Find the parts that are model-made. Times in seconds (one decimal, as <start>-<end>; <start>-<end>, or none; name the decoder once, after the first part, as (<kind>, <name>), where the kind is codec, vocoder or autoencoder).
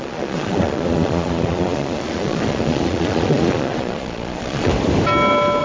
0.0-4.7 (vocoder, Vocos)